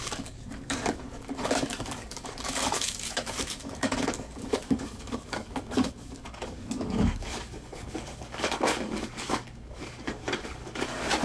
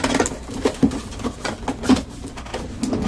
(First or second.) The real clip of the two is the second